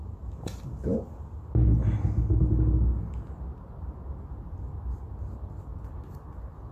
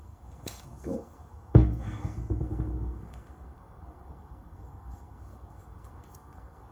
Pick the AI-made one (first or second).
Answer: second